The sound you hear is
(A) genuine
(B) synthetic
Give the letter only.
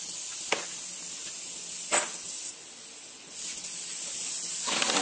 A